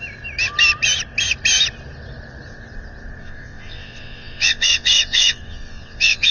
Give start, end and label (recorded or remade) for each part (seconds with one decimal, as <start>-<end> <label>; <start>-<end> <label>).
0.0-3.2 recorded; 3.2-6.3 remade